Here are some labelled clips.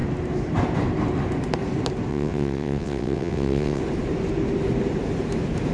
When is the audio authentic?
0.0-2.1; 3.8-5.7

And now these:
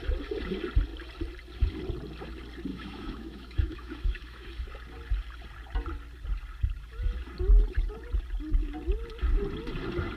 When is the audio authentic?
0.0-2.7; 4.5-10.2